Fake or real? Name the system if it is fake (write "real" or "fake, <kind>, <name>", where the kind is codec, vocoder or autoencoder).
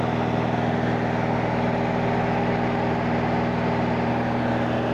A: real